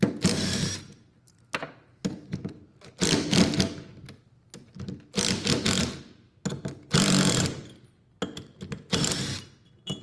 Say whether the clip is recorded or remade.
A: recorded